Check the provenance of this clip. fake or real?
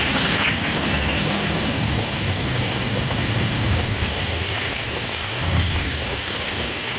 fake